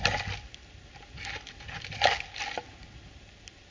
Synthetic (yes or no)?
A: no